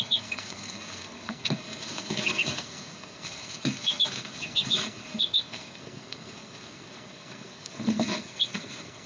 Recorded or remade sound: remade